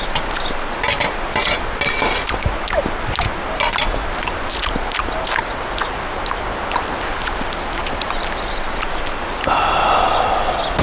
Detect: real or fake real